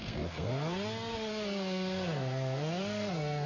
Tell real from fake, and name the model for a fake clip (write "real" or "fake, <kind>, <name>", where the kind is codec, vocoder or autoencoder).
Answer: fake, codec, SNAC